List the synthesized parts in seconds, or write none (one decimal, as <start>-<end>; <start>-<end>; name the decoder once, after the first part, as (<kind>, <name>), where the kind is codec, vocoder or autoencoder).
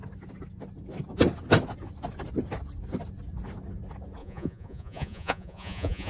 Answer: 4.2-6.1 (vocoder, Vocos)